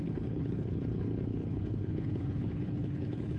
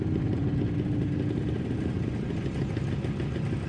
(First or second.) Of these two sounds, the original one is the second